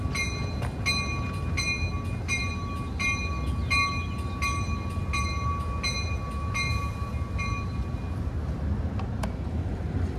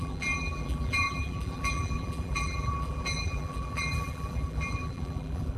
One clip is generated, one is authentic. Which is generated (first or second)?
second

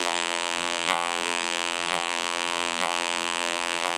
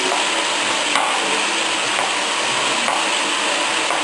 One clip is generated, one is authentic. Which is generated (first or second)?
first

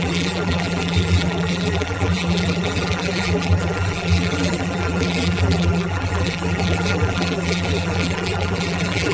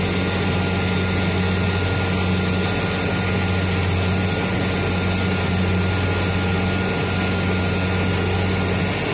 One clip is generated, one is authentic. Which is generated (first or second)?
first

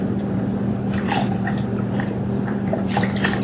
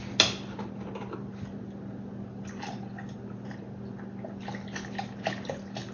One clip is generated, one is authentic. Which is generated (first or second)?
first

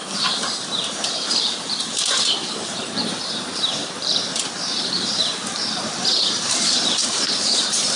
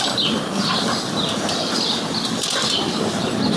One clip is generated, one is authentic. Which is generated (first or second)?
first